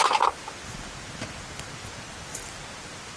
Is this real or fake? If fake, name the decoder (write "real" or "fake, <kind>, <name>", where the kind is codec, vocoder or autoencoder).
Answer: real